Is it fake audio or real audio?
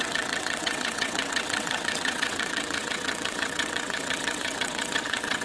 fake